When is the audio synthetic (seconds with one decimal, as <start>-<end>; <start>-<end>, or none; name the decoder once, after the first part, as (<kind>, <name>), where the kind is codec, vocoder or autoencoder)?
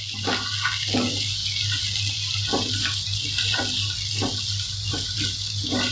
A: none